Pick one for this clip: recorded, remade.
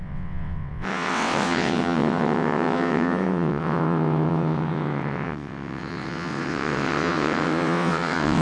remade